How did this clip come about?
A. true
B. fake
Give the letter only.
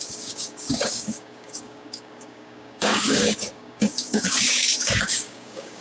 B